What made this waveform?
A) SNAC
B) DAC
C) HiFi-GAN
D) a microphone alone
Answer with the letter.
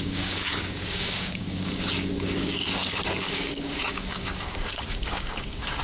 B